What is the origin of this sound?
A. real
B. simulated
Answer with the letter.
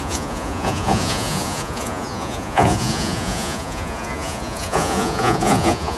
B